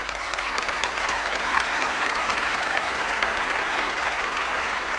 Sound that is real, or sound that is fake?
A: fake